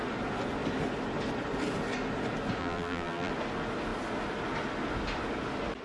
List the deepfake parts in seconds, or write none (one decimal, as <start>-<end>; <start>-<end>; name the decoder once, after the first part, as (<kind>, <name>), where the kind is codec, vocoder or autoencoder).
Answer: 2.6-3.3 (vocoder, BigVGAN v2)